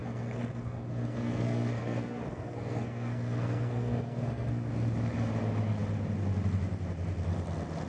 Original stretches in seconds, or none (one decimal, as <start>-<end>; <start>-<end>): 4.7-7.9